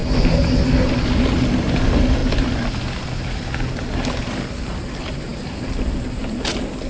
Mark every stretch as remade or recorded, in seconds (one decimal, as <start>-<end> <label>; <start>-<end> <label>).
0.0-6.9 recorded